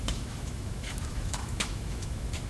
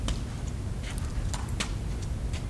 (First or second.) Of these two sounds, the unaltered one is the second